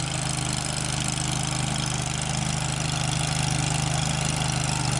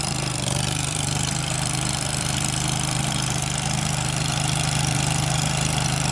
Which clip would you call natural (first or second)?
first